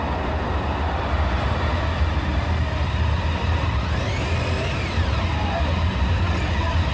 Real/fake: real